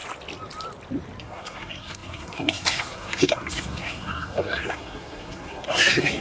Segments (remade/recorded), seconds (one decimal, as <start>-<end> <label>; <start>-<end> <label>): 0.0-1.2 recorded; 1.2-6.2 remade